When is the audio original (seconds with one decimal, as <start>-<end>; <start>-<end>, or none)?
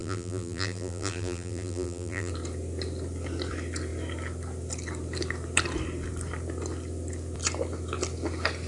2.3-8.7